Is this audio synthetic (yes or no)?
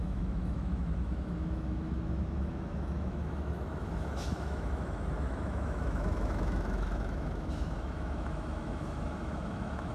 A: yes